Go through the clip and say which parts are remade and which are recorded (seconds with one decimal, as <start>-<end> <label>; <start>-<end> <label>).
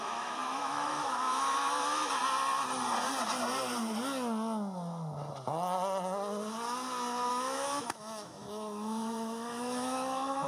0.0-2.2 remade; 2.2-7.3 recorded; 7.3-10.5 remade